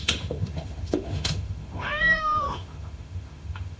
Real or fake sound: fake